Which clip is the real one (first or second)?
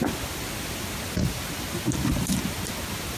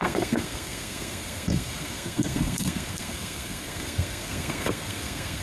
first